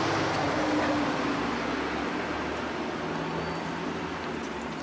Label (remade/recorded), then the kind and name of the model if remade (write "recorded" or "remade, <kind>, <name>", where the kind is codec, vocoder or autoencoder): recorded